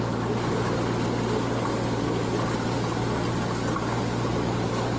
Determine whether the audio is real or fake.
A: real